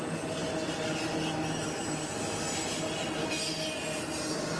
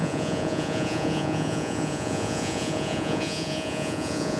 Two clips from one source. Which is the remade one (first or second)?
second